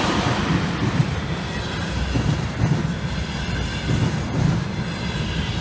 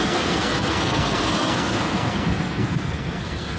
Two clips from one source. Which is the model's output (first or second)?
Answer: second